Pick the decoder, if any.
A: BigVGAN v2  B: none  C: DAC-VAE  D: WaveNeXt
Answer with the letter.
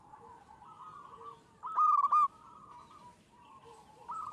A